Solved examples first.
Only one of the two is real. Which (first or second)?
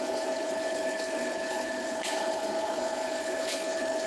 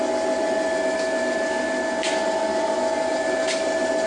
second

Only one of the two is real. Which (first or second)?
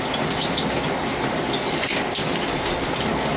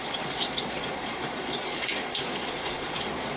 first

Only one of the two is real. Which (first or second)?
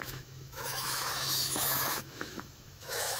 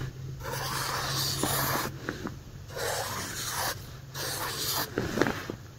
second